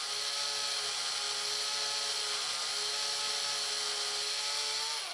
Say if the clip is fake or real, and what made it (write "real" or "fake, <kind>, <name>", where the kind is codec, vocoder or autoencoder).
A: real